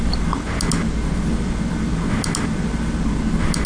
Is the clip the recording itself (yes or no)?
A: yes